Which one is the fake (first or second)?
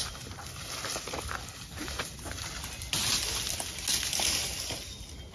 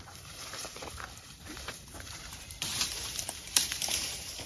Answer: second